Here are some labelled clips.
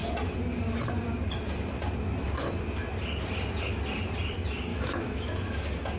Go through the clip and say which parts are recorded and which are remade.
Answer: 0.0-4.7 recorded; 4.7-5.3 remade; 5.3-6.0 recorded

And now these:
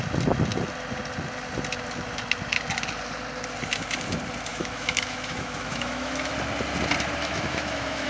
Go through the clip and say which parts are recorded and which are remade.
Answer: 0.0-4.5 recorded; 4.5-6.3 remade; 6.3-7.2 recorded; 7.2-8.1 remade